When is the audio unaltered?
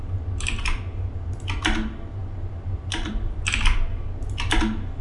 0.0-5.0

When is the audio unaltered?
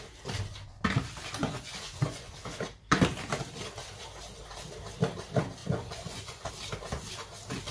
0.0-1.4; 2.3-5.6; 6.5-7.7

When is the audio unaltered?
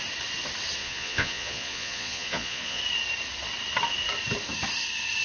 0.0-0.8; 2.8-5.2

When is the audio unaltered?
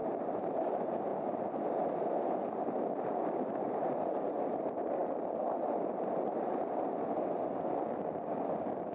0.0-8.9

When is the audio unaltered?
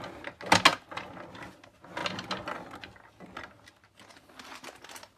0.0-0.7; 1.4-5.2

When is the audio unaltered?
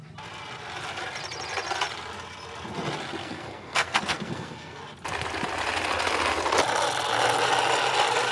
0.0-3.2; 4.8-8.3